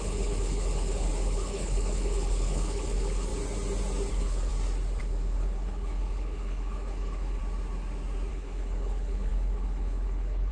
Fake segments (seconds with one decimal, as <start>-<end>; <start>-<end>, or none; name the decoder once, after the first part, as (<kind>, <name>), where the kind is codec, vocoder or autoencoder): 0.0-3.3 (codec, HILCodec); 4.1-4.5; 5.0-7.4; 8.3-10.5